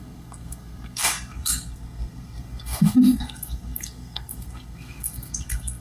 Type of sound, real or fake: fake